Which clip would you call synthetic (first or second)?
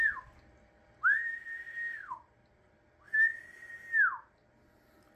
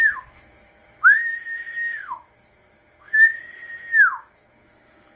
second